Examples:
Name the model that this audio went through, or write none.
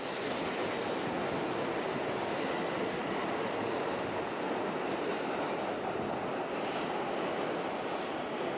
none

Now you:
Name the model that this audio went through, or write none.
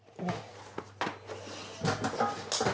none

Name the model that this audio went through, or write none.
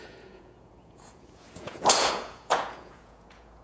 vocoder, Vocos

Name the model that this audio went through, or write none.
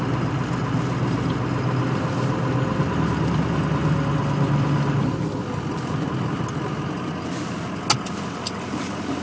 none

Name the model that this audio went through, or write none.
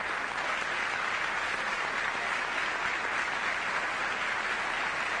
none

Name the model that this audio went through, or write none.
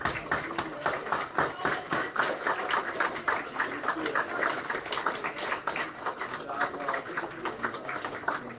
none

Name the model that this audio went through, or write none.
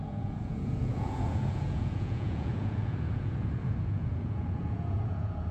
vocoder, Vocos